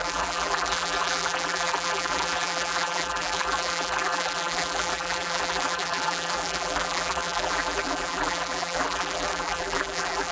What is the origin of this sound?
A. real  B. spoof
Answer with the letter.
B